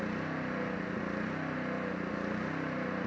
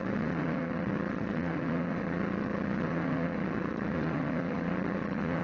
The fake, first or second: second